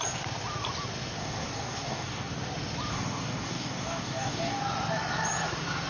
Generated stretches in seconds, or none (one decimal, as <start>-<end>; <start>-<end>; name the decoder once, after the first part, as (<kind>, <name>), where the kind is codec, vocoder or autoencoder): 1.2-2.3 (codec, DAC); 2.9-4.6